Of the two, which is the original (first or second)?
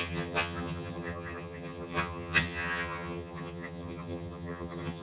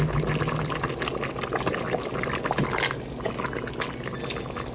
second